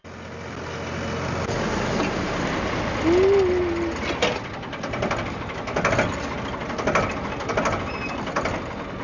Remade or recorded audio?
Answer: recorded